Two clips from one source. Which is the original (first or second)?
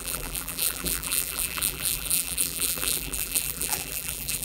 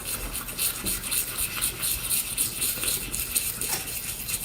second